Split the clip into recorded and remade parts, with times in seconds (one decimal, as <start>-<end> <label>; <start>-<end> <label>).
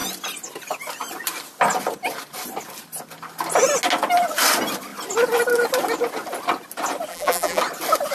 0.0-7.1 recorded; 7.1-7.6 remade; 7.6-8.1 recorded